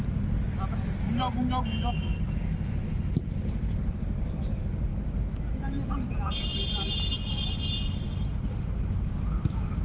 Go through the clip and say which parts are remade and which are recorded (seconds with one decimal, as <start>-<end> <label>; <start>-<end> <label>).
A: 0.0-9.8 recorded